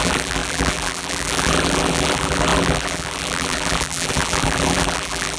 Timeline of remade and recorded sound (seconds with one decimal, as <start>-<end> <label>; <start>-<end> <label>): 0.0-5.4 remade